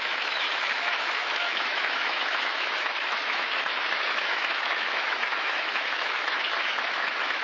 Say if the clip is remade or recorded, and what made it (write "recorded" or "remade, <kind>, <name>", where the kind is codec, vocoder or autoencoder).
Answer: remade, autoencoder, DAC-VAE